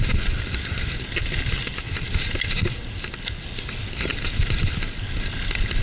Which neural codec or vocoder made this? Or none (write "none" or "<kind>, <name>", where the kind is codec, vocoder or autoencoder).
none